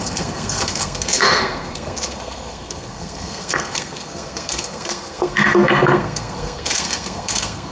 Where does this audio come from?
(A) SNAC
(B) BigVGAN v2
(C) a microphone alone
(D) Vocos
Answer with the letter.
A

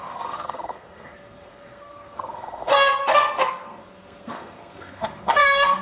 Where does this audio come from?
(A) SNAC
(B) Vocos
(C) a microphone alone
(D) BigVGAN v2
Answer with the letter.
A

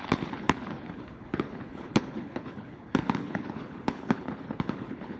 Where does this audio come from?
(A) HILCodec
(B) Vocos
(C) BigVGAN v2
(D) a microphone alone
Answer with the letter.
A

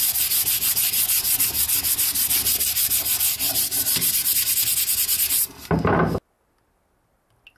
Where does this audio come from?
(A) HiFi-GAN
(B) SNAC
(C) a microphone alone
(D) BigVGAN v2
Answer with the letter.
C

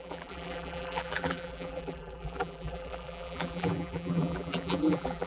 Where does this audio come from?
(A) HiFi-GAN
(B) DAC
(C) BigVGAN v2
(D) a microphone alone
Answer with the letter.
C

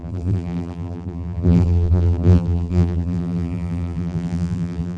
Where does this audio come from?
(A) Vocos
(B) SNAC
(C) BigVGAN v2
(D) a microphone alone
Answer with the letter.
C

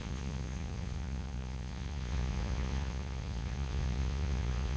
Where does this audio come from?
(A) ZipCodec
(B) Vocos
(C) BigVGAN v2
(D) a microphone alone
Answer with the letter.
B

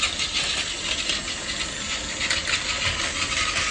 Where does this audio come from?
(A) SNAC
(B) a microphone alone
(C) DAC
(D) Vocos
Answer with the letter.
B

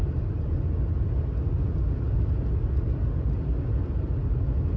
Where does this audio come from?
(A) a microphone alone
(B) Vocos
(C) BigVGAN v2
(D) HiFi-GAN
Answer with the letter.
A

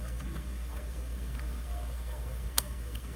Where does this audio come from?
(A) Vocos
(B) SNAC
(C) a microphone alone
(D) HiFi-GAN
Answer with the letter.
B